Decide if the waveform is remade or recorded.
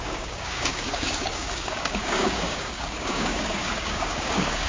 remade